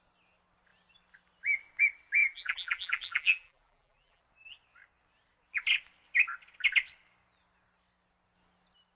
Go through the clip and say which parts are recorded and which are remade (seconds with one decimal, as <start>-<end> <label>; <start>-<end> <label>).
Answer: 0.0-2.2 recorded; 2.2-4.2 remade; 4.2-9.0 recorded